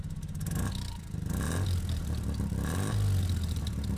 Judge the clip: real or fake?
real